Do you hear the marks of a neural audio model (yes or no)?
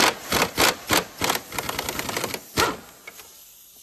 no